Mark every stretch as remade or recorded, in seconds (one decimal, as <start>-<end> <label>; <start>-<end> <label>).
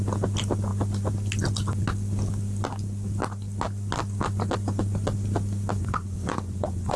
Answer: 0.0-5.8 recorded; 5.8-7.0 remade